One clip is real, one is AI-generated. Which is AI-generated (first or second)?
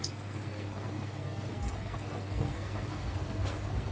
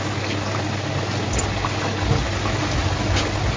first